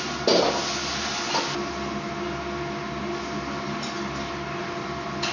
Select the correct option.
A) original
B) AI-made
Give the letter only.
A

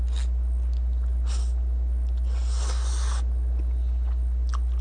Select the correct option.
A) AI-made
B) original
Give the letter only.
B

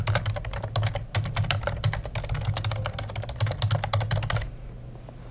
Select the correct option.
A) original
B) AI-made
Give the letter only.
A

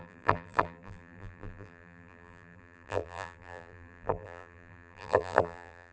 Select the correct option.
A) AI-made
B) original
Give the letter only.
A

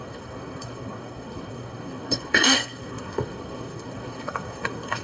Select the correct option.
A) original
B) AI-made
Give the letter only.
B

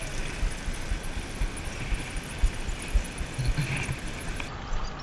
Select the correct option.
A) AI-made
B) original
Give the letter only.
B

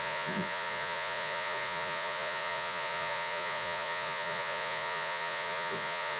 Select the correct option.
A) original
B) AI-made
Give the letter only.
B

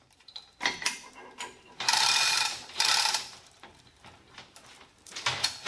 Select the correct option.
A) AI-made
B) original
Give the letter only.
A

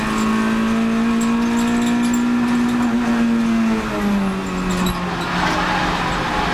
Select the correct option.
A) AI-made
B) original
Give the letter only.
B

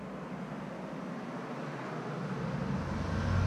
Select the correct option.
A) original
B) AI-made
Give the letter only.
A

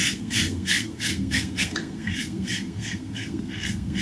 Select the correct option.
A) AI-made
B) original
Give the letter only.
A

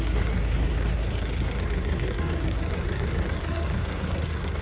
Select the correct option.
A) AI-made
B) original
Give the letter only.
A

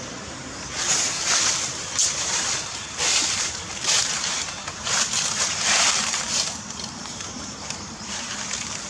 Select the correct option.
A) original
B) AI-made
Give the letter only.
B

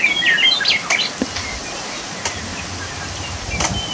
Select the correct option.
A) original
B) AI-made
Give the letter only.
A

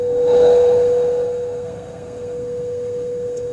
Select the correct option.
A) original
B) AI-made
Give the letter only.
B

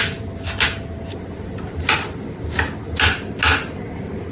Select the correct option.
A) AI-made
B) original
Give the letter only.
B